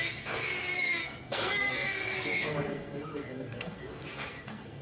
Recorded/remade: remade